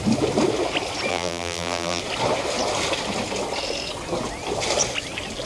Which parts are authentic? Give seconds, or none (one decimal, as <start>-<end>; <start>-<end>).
0.0-1.1; 2.0-5.5